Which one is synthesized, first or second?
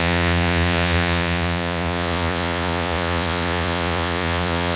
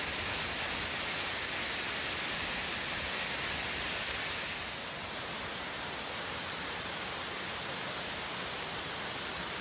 first